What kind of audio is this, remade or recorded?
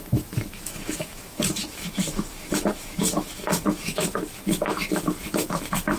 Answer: remade